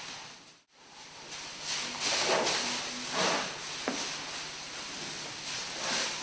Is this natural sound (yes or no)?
yes